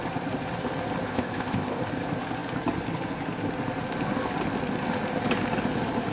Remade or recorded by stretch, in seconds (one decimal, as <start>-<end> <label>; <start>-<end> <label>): 0.0-1.1 recorded; 1.1-1.8 remade; 1.8-6.1 recorded